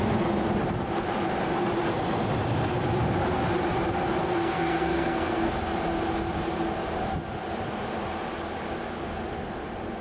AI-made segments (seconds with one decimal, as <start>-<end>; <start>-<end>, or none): 4.2-5.5